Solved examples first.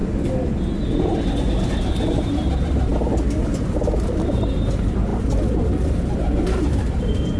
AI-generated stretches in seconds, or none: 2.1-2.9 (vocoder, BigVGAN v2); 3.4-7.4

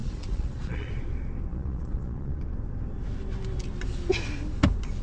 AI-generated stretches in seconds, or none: 0.0-0.9 (vocoder, Vocos); 1.5-2.4

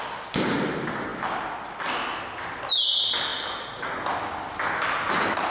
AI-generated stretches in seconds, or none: none

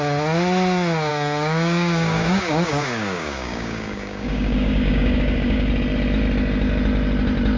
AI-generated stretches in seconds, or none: 1.1-5.7 (codec, DAC)

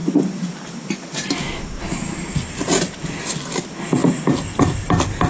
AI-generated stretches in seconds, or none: none